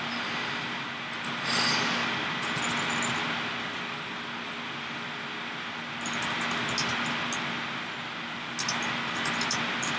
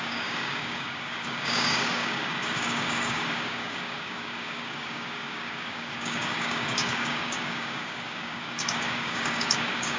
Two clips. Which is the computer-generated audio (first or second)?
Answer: second